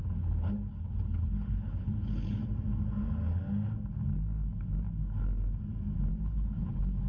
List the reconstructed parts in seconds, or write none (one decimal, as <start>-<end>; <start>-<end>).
0.0-2.4; 6.1-7.1